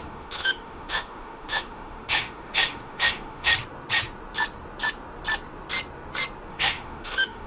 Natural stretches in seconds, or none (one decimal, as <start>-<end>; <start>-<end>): 3.5-6.5